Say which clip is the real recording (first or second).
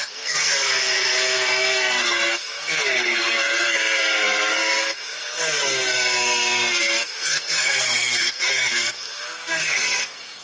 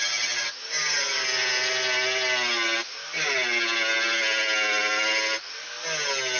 second